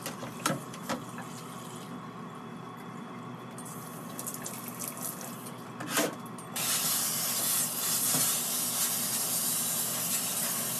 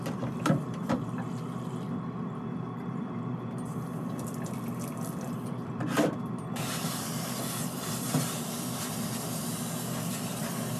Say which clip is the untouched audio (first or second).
first